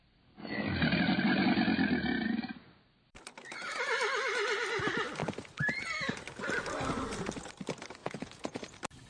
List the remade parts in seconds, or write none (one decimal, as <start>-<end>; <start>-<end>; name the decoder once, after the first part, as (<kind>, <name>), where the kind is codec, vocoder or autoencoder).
8.0-8.6 (vocoder, Vocos)